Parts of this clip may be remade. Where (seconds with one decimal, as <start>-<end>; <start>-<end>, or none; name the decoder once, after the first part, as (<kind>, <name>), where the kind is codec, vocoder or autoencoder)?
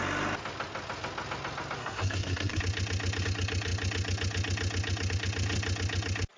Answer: 1.8-2.6 (codec, SNAC)